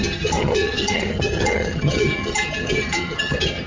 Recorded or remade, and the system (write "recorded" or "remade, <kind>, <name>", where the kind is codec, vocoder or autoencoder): remade, vocoder, HiFi-GAN